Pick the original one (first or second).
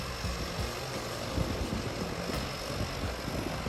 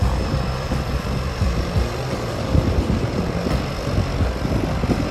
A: first